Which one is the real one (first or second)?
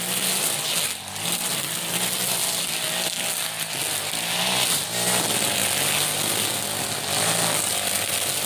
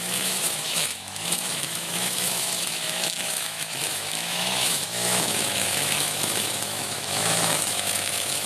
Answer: first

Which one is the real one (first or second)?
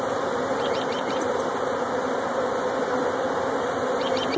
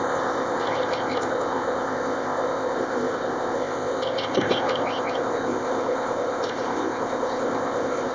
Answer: first